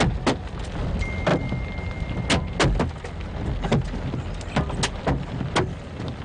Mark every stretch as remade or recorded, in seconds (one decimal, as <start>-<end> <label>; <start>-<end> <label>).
0.0-6.2 recorded